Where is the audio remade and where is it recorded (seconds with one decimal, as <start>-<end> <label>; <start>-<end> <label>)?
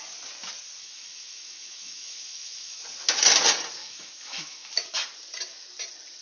0.0-0.8 recorded; 0.8-2.8 remade; 2.8-3.8 recorded; 3.8-4.7 remade; 4.7-6.2 recorded